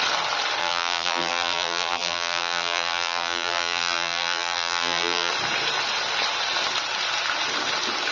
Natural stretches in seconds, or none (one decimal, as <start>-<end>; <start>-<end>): 0.0-0.6; 5.3-8.1

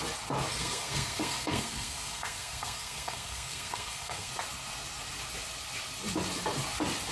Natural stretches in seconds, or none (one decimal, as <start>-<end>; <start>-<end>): 0.0-0.5; 4.3-7.1

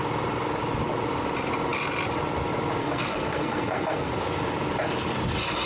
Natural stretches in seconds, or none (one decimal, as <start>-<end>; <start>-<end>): 0.0-2.8; 4.1-5.7